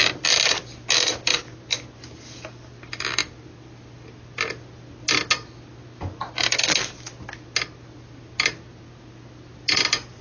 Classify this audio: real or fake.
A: real